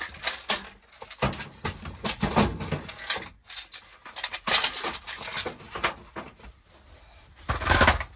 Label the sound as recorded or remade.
recorded